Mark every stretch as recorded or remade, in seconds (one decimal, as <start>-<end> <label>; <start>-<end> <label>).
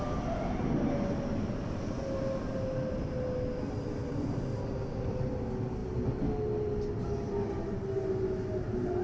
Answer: 0.0-9.0 recorded